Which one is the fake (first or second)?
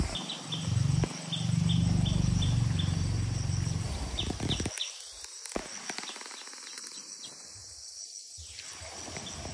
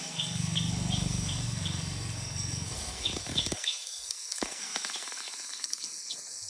second